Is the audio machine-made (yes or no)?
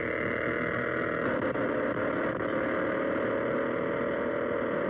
no